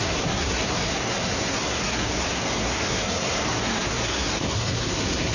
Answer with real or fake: fake